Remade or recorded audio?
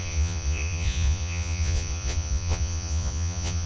remade